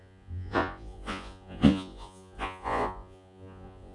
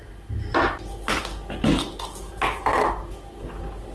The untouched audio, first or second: second